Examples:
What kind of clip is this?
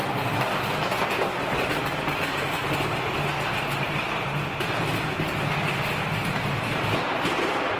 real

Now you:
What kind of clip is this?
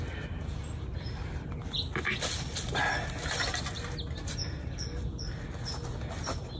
real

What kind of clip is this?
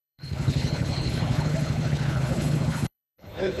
fake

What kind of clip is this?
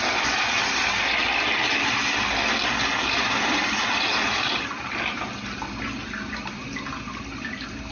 real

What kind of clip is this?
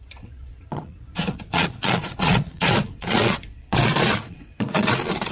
fake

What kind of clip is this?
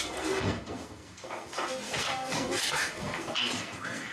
fake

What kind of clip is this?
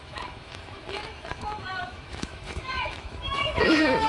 fake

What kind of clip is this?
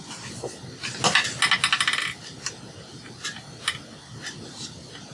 real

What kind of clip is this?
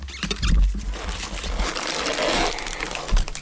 real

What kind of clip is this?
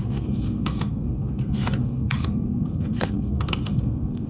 fake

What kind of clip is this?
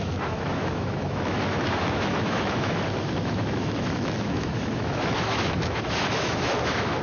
fake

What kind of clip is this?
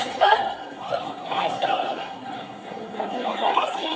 fake